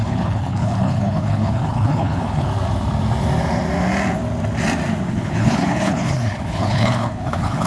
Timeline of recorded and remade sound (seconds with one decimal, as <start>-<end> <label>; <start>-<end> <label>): 0.0-2.5 remade; 2.5-5.1 recorded; 5.1-7.7 remade